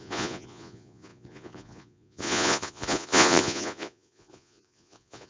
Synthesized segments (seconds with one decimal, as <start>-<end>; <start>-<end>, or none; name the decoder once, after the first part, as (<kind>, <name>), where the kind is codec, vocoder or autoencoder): 0.0-5.3 (vocoder, Vocos)